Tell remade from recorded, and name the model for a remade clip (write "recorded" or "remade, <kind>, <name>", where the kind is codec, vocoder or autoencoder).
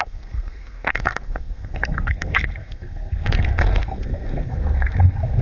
remade, codec, SNAC